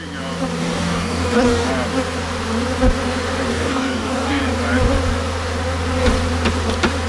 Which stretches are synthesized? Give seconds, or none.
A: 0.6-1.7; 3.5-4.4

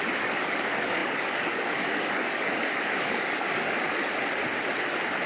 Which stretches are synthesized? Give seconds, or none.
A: 0.0-4.1

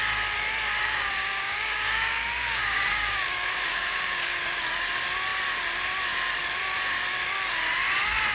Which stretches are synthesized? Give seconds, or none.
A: 0.8-4.4

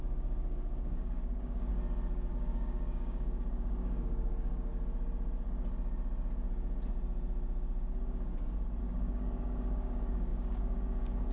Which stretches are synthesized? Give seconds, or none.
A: 0.0-1.7; 2.3-4.7; 8.8-11.3

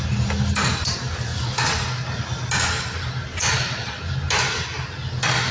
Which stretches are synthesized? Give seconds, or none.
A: none